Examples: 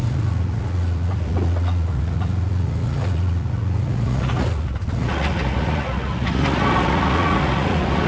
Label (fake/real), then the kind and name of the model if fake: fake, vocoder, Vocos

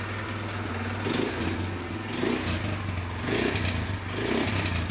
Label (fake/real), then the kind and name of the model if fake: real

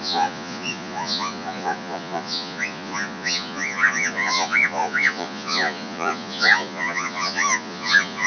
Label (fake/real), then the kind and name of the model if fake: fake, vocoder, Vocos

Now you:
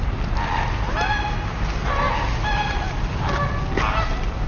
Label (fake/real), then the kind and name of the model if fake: real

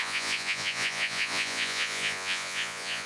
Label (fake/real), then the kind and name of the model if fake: fake, vocoder, Vocos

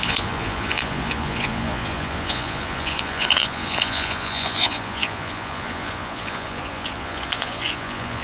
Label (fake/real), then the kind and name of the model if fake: fake, vocoder, Vocos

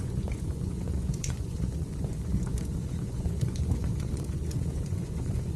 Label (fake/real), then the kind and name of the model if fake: fake, vocoder, Vocos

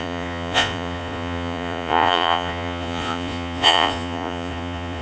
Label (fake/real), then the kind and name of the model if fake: fake, vocoder, Vocos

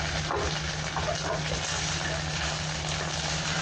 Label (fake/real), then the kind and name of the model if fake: real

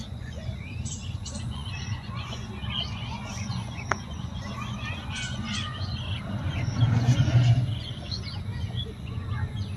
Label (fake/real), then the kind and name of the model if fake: fake, vocoder, Vocos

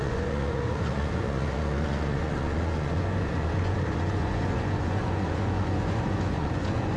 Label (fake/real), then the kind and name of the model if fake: fake, vocoder, Vocos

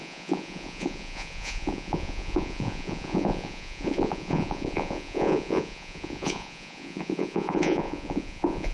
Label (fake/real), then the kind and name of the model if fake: fake, vocoder, Vocos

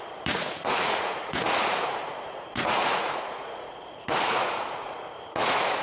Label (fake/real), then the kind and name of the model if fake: fake, vocoder, Vocos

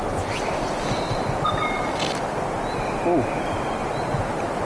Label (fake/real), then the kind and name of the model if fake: real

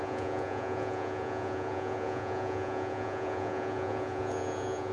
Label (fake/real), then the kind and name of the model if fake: fake, vocoder, Vocos